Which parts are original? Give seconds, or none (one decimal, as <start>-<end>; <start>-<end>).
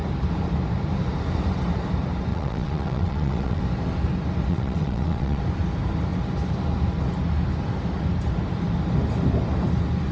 0.0-2.3; 3.6-4.5; 5.4-10.1